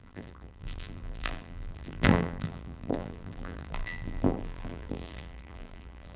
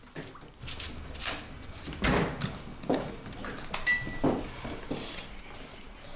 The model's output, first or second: first